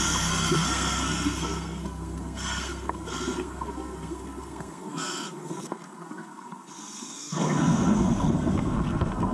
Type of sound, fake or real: fake